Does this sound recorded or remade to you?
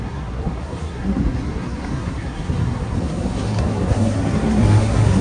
remade